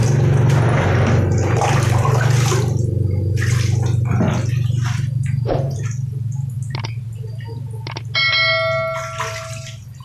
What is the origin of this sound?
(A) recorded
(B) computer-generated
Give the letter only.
A